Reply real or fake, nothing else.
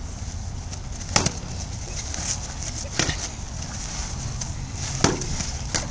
real